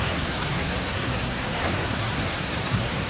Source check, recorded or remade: remade